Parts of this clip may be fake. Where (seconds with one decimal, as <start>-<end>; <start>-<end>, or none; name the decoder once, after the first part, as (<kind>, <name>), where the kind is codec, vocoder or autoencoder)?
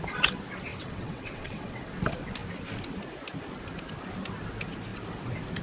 0.7-2.0 (vocoder, WaveNeXt)